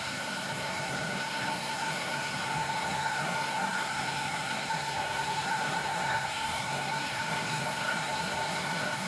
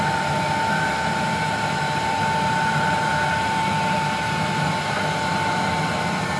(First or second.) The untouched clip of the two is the second